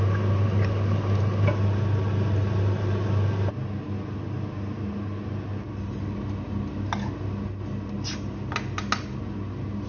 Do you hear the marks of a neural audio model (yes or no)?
no